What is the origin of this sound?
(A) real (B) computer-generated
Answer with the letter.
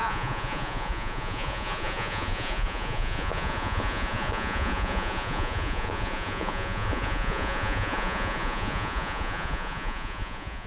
B